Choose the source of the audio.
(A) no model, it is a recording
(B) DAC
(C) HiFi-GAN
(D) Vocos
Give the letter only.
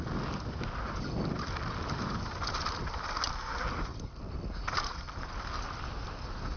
A